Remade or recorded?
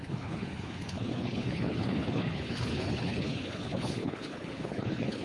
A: remade